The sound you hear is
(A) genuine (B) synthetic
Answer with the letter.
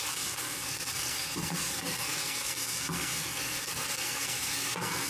B